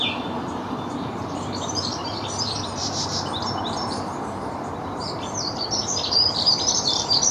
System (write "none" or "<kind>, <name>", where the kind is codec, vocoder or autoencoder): vocoder, BigVGAN v2